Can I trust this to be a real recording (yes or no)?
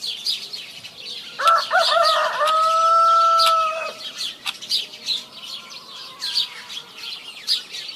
yes